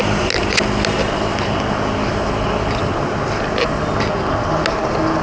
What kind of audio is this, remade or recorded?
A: recorded